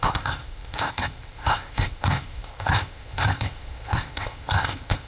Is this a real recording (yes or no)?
no